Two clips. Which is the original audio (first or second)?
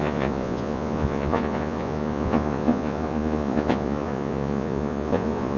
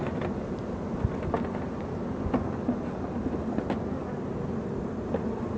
second